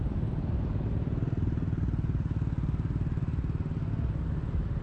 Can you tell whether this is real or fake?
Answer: real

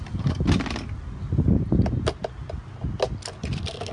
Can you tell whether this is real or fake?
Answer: real